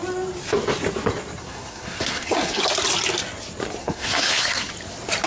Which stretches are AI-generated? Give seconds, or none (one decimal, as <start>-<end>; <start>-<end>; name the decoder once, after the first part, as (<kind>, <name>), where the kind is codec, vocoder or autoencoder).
1.4-2.6 (codec, SNAC); 3.8-4.7